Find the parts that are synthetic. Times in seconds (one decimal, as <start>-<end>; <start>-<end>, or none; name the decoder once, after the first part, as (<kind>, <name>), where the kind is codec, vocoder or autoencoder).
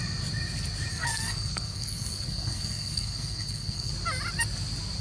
0.9-3.9 (codec, SNAC)